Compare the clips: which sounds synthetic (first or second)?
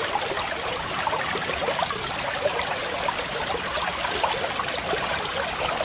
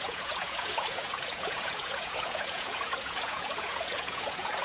second